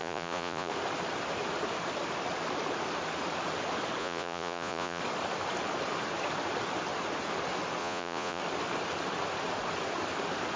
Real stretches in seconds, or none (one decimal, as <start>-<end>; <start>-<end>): 0.7-4.0; 5.0-7.8; 8.4-10.6

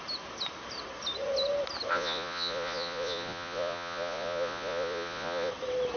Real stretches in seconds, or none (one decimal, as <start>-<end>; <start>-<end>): 0.0-1.9; 5.5-6.0

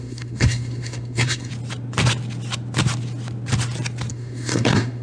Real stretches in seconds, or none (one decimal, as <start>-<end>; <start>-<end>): 1.5-4.1

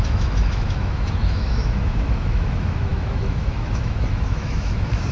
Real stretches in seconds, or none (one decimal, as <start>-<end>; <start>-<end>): none

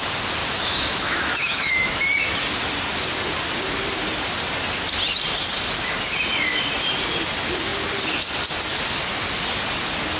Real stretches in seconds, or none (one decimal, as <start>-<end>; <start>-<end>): 0.0-0.4; 2.0-10.2

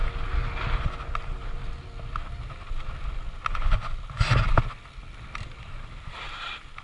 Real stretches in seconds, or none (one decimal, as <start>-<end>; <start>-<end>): 0.0-1.1; 1.6-5.7

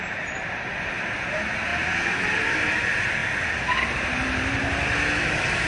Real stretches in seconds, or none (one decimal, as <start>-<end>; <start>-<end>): 3.2-3.8; 4.6-5.7